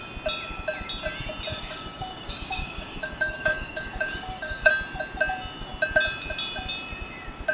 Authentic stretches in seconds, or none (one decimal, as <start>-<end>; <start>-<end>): 0.0-1.5; 4.7-7.5